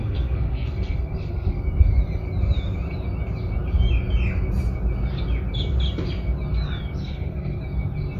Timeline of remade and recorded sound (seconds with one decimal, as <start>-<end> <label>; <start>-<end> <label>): 0.0-1.6 remade; 1.6-7.0 recorded; 7.0-7.6 remade; 7.6-8.2 recorded